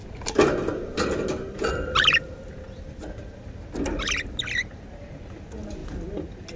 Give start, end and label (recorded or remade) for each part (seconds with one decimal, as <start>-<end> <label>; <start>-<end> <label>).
0.0-6.6 recorded